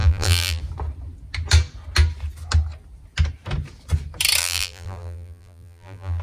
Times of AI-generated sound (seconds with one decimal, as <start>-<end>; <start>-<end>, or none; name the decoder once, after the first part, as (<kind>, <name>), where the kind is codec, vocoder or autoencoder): 0.0-0.6 (vocoder, BigVGAN v2); 4.4-6.2